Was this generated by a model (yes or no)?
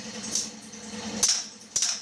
no